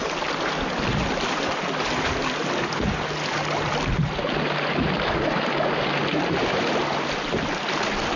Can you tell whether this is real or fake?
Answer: real